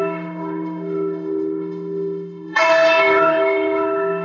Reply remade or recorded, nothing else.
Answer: remade